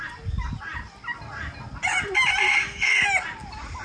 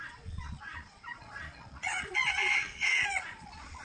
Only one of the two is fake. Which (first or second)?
second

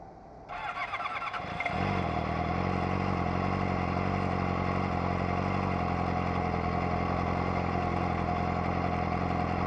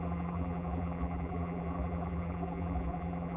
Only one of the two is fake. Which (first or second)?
second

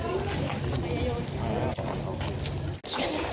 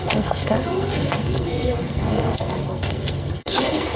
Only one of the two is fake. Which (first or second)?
second